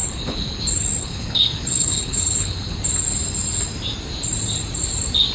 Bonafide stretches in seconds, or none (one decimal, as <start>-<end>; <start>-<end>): 0.6-1.0; 2.8-5.3